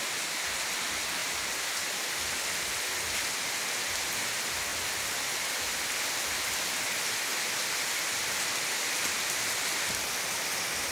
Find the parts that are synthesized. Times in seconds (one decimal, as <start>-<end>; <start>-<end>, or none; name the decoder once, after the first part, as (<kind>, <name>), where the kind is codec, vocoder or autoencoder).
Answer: none